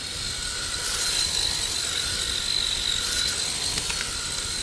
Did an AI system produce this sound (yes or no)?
no